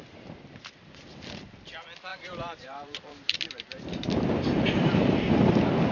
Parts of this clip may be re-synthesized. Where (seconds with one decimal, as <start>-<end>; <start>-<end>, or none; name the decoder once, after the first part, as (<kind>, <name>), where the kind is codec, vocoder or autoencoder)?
2.1-5.3 (vocoder, BigVGAN v2)